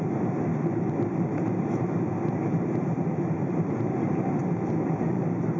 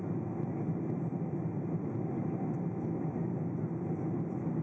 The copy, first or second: first